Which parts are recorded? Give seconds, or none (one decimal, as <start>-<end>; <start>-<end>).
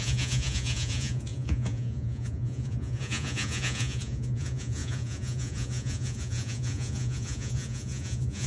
none